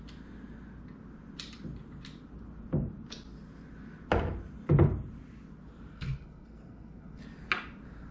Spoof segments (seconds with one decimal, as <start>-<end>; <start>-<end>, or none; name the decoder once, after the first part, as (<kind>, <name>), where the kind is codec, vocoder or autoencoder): 5.9-7.2 (codec, SNAC)